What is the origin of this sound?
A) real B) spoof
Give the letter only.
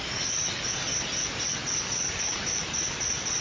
A